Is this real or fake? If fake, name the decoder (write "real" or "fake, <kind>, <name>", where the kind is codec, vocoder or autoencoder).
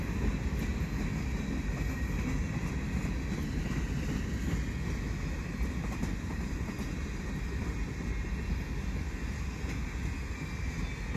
real